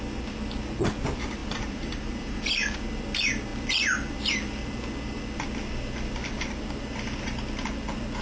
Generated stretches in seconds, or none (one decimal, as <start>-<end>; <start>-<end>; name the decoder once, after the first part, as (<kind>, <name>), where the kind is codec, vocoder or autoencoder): 1.4-2.4 (vocoder, BigVGAN v2)